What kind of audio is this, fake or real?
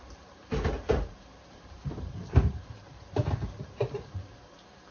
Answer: fake